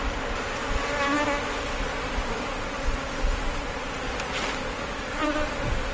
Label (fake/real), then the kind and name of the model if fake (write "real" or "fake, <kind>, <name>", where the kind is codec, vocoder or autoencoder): real